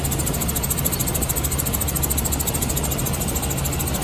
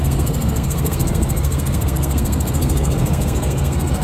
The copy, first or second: second